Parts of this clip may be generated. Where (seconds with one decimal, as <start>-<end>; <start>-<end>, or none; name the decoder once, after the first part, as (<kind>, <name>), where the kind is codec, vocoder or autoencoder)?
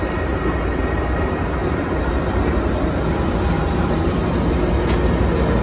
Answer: none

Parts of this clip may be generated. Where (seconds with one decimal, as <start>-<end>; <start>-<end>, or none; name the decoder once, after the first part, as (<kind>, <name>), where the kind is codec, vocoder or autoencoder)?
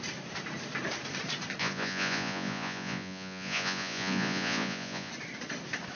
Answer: 1.6-5.1 (vocoder, Vocos)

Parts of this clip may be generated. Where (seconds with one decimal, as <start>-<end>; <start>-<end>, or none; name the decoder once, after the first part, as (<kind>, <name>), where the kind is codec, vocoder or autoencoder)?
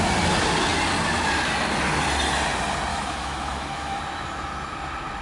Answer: 2.9-4.0 (autoencoder, DAC-VAE)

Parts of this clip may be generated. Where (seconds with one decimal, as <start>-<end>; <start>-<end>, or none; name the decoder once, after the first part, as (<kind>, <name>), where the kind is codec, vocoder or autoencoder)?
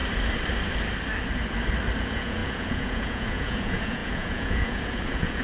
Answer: 2.0-5.4 (vocoder, Vocos)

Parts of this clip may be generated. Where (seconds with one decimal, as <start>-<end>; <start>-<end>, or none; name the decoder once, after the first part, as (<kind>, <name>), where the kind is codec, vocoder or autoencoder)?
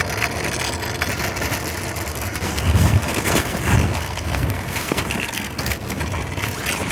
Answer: 2.1-6.0 (codec, SNAC)